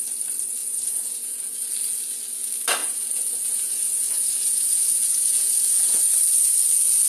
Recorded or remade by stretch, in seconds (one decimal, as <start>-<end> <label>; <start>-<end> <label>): 0.0-0.6 recorded; 0.6-1.7 remade; 1.7-2.8 recorded; 2.8-6.1 remade; 6.1-7.1 recorded